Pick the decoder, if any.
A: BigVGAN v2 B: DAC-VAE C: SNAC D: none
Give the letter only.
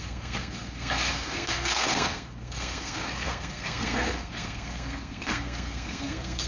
C